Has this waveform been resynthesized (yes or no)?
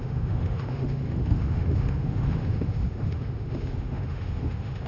yes